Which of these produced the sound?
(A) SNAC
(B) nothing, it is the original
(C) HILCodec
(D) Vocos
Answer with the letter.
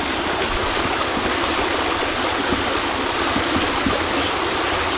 B